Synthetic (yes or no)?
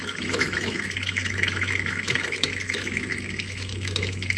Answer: yes